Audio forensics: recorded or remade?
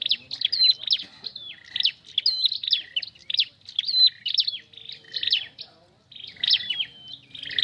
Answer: recorded